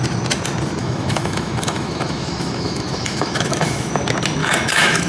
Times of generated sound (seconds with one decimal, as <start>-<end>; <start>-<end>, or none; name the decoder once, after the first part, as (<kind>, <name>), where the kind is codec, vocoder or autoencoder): 0.8-3.9 (autoencoder, DAC-VAE); 4.4-5.1